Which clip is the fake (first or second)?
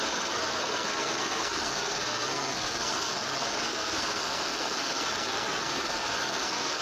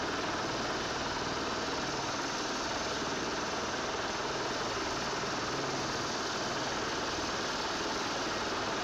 first